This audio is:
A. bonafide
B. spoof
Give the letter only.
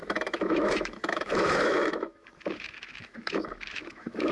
B